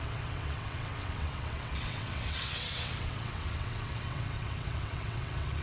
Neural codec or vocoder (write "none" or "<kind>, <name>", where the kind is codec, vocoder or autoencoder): vocoder, WaveNeXt